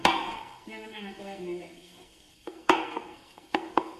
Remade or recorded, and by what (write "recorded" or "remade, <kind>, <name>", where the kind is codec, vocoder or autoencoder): remade, codec, SNAC